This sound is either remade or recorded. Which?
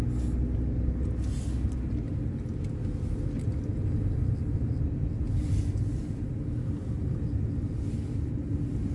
recorded